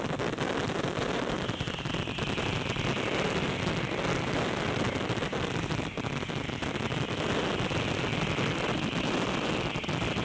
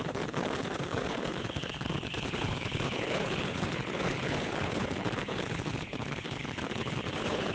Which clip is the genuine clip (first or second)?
first